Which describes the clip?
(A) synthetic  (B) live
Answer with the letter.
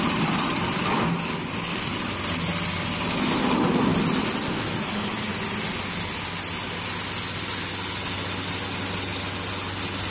B